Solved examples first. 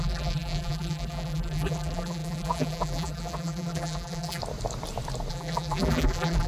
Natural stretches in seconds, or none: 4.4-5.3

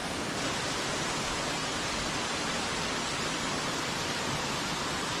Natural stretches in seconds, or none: 0.0-2.1